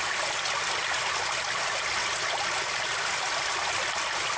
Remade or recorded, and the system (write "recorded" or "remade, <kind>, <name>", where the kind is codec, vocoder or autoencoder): recorded